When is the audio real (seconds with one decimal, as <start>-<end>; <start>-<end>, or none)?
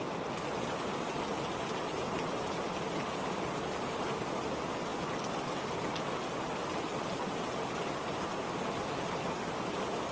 0.0-10.1